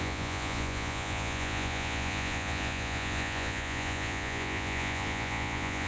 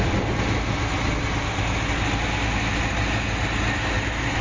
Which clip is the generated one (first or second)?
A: first